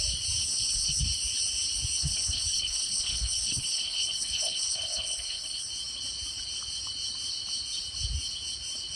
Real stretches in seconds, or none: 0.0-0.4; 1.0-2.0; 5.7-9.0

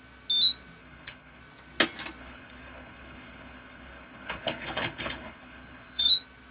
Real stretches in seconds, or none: 0.0-0.8; 1.4-2.2; 6.1-6.5

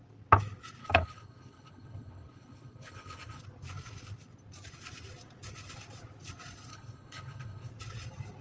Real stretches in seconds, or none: 0.0-0.8; 3.4-6.7; 7.7-8.4